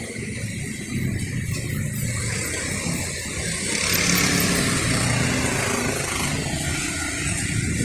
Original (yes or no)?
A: yes